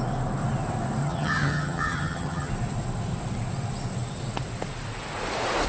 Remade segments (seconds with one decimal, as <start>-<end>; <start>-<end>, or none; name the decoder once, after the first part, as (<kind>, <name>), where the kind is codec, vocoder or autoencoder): 1.0-2.5 (vocoder, HiFi-GAN)